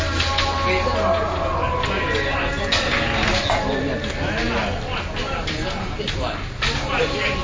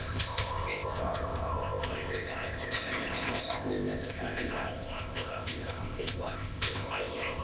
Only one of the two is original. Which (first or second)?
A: first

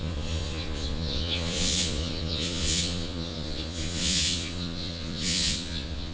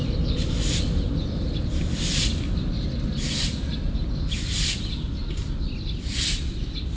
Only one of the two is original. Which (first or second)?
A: second